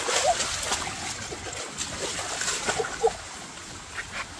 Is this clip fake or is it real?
real